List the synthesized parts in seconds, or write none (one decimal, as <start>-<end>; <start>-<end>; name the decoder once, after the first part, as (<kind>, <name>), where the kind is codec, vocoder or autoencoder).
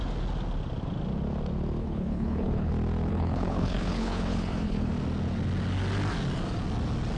1.8-2.7 (codec, HILCodec); 3.1-4.9